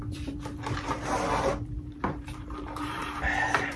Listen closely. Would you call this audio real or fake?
fake